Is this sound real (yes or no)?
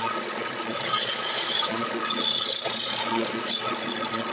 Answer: no